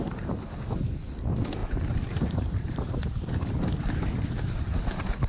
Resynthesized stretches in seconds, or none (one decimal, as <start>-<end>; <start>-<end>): 1.6-4.8